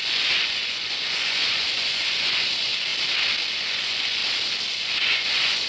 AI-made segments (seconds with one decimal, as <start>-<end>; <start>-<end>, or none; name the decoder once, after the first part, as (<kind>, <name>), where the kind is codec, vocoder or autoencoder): 0.0-2.9 (vocoder, Vocos); 3.5-4.2; 4.7-5.7